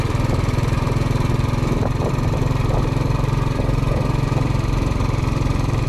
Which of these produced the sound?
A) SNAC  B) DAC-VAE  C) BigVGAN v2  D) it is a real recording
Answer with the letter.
C